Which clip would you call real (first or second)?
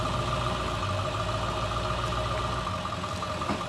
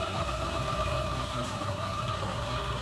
first